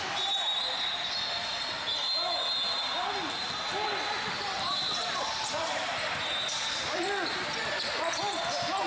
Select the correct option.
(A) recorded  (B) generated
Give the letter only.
A